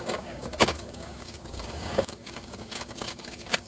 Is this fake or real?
fake